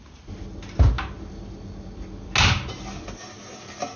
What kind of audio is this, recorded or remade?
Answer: recorded